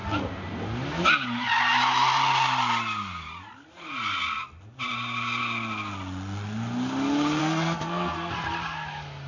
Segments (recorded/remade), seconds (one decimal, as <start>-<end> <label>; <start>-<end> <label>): 0.0-7.4 recorded; 7.4-8.3 remade; 8.3-9.3 recorded